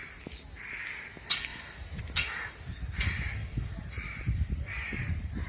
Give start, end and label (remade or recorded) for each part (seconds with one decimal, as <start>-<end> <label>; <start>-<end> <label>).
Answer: 0.0-1.5 recorded; 1.5-2.0 remade; 2.0-3.4 recorded; 3.4-5.5 remade